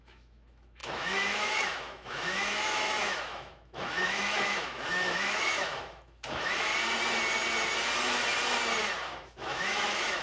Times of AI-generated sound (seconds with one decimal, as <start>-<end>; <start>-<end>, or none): 0.0-6.7; 9.1-10.2